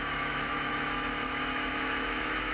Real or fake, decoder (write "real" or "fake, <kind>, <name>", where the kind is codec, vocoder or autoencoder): fake, autoencoder, DAC-VAE